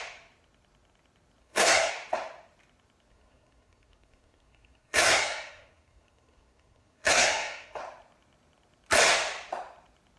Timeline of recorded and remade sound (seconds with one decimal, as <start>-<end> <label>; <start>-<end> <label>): 0.0-1.4 recorded; 1.4-1.9 remade; 1.9-3.1 recorded; 3.1-7.8 remade; 7.8-10.2 recorded

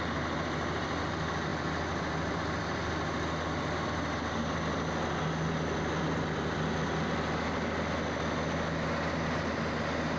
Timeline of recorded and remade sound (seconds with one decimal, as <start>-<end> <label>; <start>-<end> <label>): 0.0-10.2 recorded

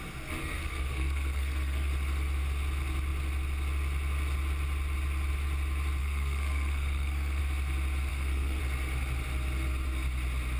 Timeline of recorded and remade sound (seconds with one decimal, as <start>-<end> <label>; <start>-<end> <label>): 0.0-0.4 recorded; 0.4-1.9 remade; 1.9-6.0 recorded; 6.0-7.4 remade; 7.4-8.1 recorded; 8.1-8.6 remade; 8.6-10.6 recorded